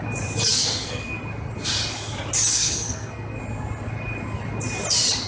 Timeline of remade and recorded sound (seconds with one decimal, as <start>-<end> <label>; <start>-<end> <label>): 0.0-0.5 recorded; 0.5-1.2 remade; 1.2-2.5 recorded; 2.5-3.4 remade; 3.4-5.3 recorded